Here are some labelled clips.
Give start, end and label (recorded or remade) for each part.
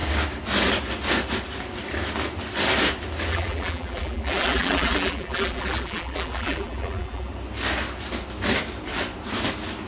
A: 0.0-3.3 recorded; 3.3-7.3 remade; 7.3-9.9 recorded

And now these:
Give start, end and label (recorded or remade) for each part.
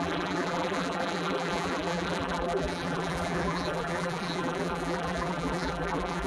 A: 0.0-6.3 remade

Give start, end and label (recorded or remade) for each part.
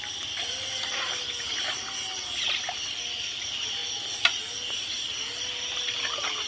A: 0.0-6.5 recorded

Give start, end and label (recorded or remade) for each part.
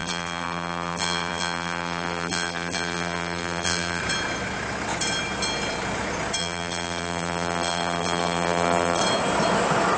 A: 0.0-4.0 remade; 4.0-6.4 recorded; 6.4-9.0 remade; 9.0-10.0 recorded